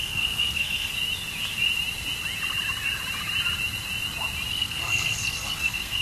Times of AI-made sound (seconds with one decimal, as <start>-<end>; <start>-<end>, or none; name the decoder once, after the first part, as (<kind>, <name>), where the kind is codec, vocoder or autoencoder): 0.0-0.9 (codec, SNAC); 4.5-6.0